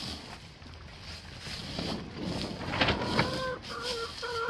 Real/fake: real